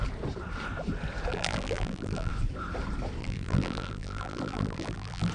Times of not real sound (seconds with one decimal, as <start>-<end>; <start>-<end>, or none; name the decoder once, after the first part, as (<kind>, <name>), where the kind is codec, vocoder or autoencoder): 1.3-2.3 (vocoder, BigVGAN v2); 3.2-5.3